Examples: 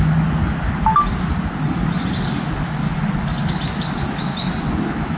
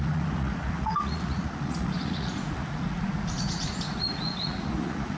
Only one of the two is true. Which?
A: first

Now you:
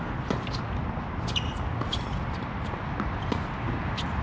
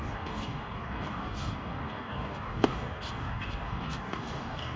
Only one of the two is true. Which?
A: first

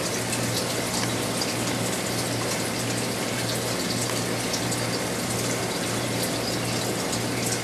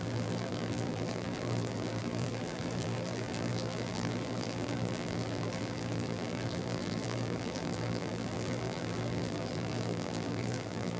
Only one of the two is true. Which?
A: first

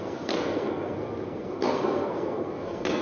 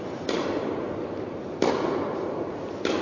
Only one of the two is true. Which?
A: second